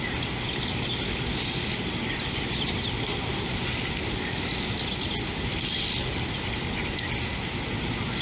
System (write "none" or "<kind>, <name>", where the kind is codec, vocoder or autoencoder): none